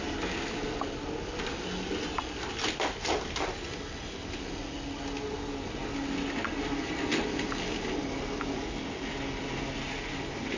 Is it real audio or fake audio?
real